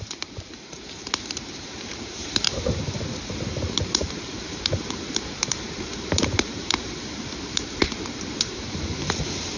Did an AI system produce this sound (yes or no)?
yes